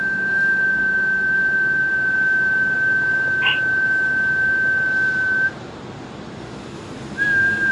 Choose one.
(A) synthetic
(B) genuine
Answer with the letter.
B